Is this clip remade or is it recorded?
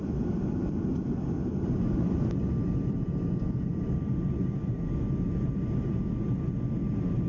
recorded